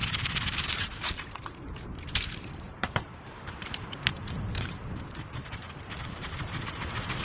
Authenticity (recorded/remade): remade